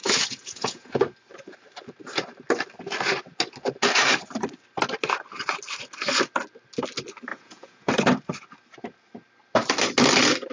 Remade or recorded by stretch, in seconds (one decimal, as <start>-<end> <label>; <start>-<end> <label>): 0.0-1.0 remade; 1.0-7.3 recorded; 7.3-7.9 remade; 7.9-10.5 recorded